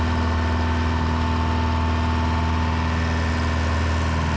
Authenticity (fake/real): real